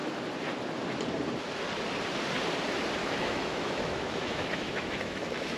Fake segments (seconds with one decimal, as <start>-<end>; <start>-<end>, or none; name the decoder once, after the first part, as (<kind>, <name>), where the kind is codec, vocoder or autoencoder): 3.0-5.6 (autoencoder, DAC-VAE)

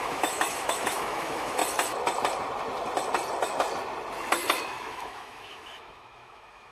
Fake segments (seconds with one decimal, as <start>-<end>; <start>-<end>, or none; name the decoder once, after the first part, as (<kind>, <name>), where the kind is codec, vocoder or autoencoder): 0.0-1.6 (autoencoder, DAC-VAE); 4.6-6.7

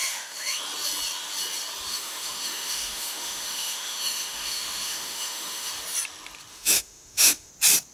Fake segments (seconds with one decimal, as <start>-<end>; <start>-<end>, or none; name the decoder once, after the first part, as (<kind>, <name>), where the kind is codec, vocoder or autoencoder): 0.0-0.6 (autoencoder, DAC-VAE); 1.9-5.7; 6.5-7.5

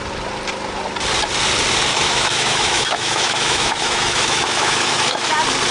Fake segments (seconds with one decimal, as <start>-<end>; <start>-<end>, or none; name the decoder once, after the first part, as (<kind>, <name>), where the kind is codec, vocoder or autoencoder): 1.9-5.3 (autoencoder, DAC-VAE)

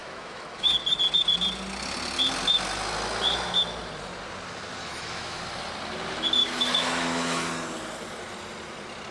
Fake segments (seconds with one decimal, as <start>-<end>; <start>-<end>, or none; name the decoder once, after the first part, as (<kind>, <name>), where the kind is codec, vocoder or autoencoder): 0.0-0.7 (autoencoder, DAC-VAE); 4.8-5.4; 6.4-7.5

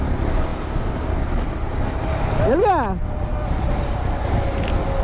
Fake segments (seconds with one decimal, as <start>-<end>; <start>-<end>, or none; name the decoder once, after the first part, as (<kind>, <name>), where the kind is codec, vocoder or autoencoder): none

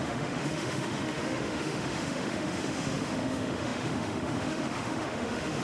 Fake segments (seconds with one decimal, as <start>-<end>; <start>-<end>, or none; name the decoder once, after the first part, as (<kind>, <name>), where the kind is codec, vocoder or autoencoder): 0.0-5.6 (autoencoder, DAC-VAE)

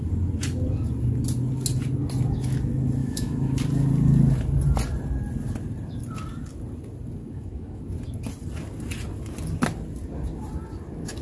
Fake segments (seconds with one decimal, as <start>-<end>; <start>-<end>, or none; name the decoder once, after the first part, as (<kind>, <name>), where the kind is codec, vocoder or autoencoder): 3.0-3.6 (autoencoder, DAC-VAE); 7.2-7.8